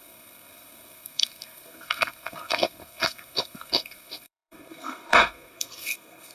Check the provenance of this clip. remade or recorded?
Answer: remade